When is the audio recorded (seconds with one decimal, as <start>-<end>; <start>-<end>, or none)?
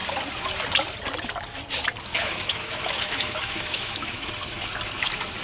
0.0-2.1; 4.3-5.4